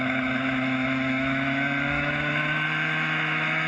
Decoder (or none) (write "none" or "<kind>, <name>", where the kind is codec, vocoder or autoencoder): autoencoder, DAC-VAE